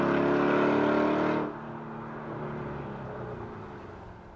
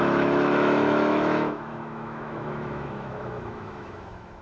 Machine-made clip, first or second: second